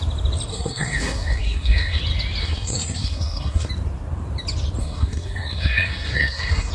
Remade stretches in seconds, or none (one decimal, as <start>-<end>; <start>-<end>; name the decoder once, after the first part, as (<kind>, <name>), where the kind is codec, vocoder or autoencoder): 0.5-2.0 (codec, SNAC); 2.4-3.7; 4.8-6.7